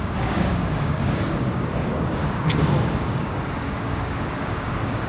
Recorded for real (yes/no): no